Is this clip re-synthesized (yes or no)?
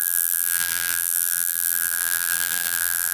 yes